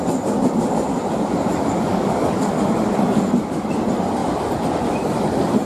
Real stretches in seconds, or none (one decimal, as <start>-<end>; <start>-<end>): 0.0-1.9; 2.5-5.7

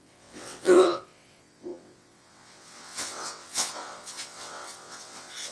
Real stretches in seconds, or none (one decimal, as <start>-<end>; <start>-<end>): none

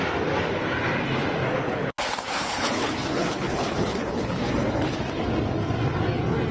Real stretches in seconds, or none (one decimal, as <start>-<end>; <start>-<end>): 0.0-1.6; 5.0-6.5